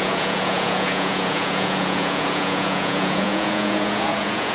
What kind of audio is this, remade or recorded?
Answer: remade